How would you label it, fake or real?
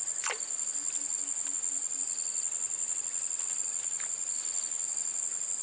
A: real